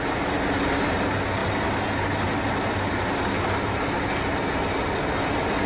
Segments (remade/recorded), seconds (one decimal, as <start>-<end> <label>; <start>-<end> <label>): 0.0-5.7 recorded